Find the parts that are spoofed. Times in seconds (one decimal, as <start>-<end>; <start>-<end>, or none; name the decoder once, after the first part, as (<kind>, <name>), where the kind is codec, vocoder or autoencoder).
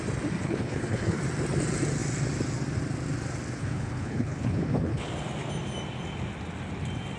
0.4-1.2 (codec, HILCodec); 3.6-5.1